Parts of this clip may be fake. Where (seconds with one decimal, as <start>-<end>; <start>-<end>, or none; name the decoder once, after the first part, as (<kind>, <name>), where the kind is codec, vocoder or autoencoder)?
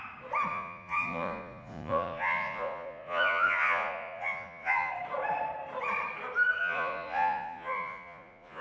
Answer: 0.5-4.9 (vocoder, Vocos); 6.6-8.6